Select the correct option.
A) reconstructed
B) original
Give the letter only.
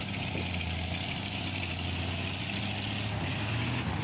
B